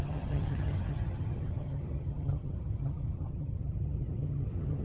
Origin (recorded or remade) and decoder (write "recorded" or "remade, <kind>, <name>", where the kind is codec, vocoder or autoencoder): remade, vocoder, HiFi-GAN